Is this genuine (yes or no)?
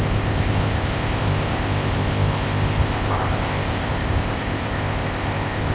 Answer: no